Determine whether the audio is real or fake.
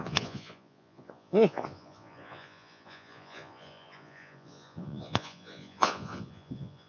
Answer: fake